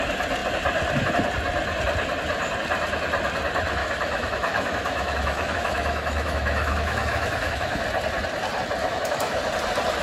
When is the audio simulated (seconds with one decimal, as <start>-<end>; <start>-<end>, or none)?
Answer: 3.8-7.8; 8.8-9.4